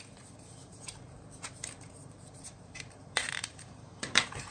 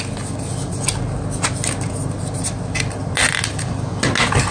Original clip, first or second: second